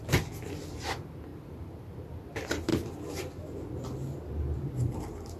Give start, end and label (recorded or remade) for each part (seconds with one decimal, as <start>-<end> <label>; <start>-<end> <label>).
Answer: 0.0-5.4 recorded